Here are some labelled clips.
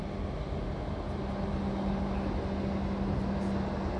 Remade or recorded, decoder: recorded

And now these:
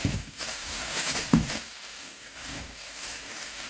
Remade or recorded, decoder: remade, codec, DAC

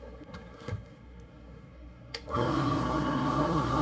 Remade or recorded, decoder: remade, codec, SNAC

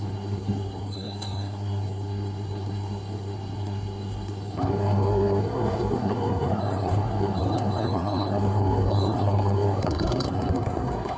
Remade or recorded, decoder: remade, codec, SNAC